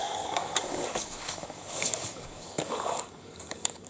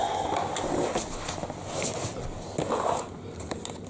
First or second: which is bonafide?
second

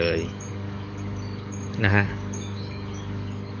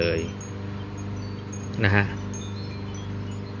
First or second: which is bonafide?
second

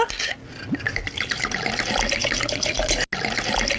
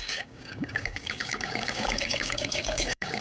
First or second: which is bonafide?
first